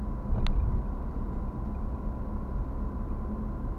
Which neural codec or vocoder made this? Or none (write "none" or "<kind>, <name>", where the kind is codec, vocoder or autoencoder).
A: none